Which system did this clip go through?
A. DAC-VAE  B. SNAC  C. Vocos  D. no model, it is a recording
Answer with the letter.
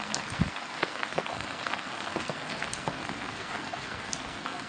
B